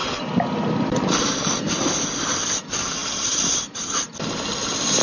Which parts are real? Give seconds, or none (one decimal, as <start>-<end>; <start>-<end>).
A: 0.0-5.0